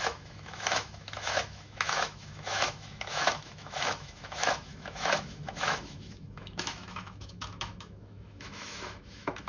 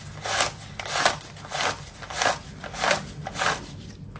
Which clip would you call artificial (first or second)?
first